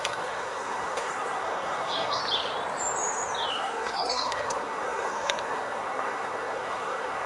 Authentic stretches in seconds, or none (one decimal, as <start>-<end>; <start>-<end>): 2.2-3.5